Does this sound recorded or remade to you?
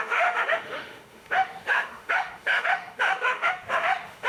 remade